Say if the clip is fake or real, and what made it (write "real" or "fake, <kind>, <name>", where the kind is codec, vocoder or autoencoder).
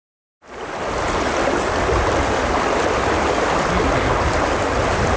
real